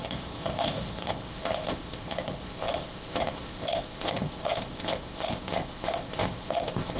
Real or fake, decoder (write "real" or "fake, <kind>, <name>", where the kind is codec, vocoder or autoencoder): fake, codec, ZipCodec